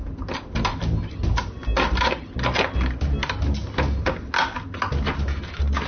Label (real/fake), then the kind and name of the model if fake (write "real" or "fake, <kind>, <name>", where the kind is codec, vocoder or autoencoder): real